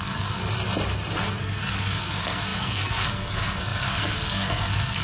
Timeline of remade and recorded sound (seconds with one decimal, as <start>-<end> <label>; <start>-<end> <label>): 0.0-0.4 remade; 0.4-1.4 recorded; 1.4-5.0 remade